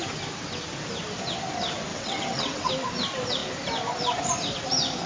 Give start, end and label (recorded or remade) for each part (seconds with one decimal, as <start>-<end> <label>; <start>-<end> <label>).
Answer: 0.0-1.9 recorded; 1.9-2.7 remade; 2.7-5.1 recorded